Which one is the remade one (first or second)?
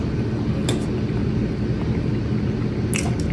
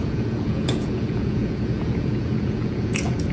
second